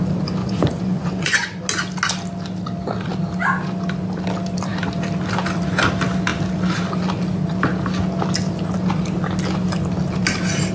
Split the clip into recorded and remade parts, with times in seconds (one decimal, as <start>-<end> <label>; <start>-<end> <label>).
0.0-0.4 recorded; 0.4-1.6 remade; 1.6-10.7 recorded